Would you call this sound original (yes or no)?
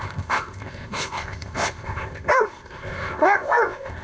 no